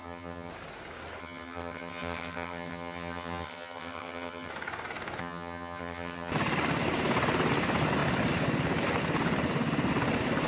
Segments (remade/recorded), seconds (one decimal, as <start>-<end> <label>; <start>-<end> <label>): 0.0-0.5 remade; 0.5-1.2 recorded; 1.2-4.5 remade; 4.5-5.2 recorded; 5.2-6.3 remade; 6.3-10.5 recorded